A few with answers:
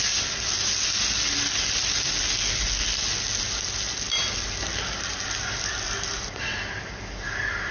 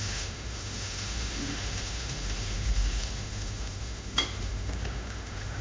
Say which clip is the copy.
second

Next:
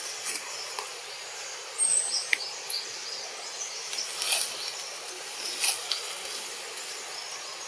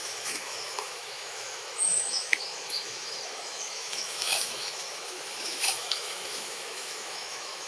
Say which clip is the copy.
second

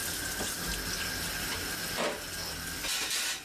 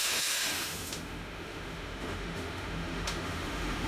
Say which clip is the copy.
second